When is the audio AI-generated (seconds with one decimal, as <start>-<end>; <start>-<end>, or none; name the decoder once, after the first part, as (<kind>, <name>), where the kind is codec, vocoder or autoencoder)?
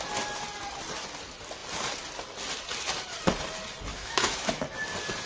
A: 3.9-4.6 (autoencoder, DAC-VAE)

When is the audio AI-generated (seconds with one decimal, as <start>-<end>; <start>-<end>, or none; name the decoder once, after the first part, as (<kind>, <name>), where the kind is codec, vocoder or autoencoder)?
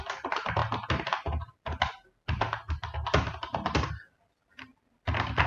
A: none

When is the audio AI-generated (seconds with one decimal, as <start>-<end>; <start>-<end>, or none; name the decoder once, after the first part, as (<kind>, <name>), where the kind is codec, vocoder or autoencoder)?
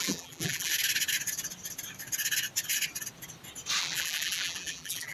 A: 0.0-0.7 (vocoder, BigVGAN v2); 3.8-5.1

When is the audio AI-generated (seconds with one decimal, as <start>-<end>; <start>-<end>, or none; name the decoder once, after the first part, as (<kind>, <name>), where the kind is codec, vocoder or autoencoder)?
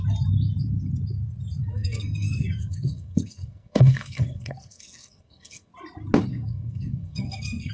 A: 1.7-5.7 (codec, SNAC); 6.3-7.7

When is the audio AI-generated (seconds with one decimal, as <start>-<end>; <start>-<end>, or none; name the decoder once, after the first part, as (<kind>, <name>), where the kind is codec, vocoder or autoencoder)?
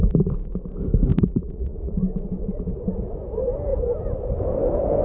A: 1.1-2.0 (vocoder, Vocos)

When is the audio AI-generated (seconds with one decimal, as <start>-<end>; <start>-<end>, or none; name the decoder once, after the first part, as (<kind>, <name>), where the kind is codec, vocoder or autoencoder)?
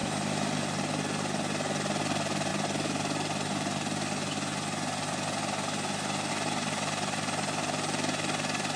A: none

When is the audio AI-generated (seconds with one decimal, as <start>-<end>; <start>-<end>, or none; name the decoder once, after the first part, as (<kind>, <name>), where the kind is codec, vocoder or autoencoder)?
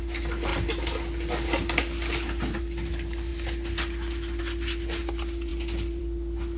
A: none